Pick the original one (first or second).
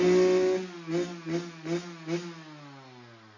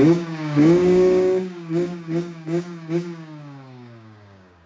first